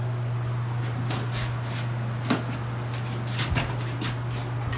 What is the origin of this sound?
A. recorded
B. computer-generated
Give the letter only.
A